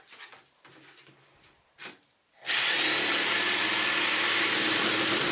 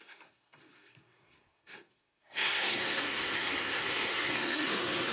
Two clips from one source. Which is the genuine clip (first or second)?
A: first